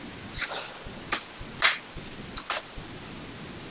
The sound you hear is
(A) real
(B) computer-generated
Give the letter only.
A